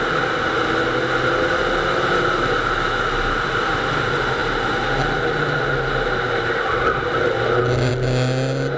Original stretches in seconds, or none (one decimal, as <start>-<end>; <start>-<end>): 0.0-8.8